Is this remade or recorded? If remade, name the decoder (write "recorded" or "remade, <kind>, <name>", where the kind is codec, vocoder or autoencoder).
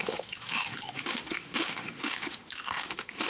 remade, autoencoder, DAC-VAE